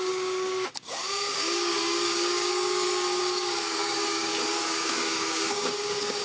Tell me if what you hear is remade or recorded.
remade